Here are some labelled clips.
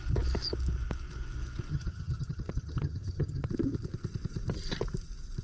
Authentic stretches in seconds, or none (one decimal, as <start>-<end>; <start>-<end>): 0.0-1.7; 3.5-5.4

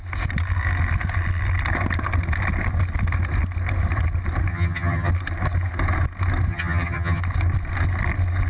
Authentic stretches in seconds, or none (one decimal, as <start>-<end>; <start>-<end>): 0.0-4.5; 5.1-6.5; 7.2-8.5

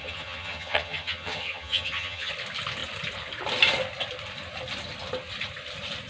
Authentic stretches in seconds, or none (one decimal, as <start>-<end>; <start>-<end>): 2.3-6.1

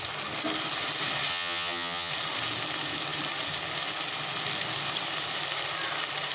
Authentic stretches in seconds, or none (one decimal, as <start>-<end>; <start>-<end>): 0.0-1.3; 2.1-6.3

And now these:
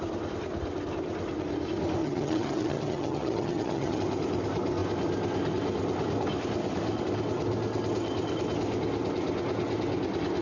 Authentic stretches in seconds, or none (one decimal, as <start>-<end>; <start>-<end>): 0.0-2.0; 4.0-10.4

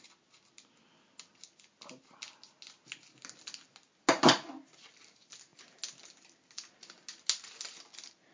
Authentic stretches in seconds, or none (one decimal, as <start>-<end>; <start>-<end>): 0.0-8.3

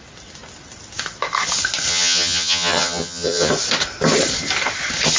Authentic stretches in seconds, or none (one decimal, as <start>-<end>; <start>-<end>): 0.0-1.9; 3.5-5.2